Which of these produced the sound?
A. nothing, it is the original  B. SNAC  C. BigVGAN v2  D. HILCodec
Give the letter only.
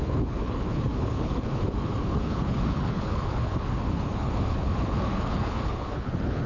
D